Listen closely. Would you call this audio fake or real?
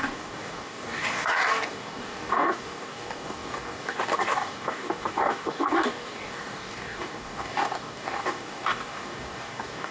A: fake